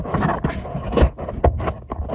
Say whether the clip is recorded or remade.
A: recorded